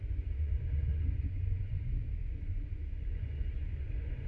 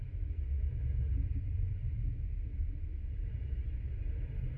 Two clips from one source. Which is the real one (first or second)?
second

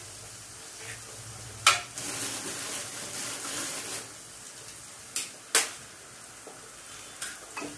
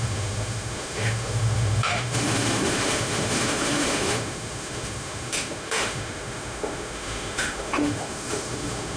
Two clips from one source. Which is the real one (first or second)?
first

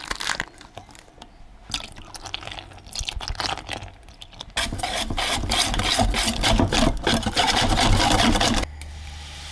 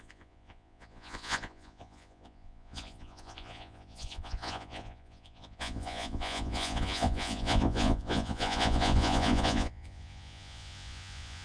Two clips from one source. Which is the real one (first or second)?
first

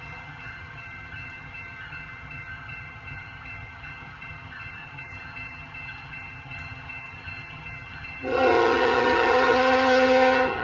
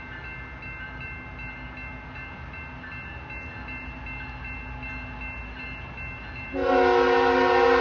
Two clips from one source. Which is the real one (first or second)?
second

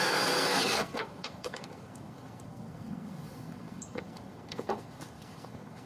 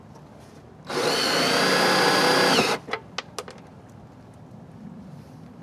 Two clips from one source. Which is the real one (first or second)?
second